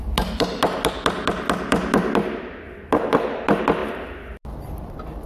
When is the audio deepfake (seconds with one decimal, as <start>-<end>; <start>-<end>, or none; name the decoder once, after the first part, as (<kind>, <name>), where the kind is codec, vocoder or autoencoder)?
none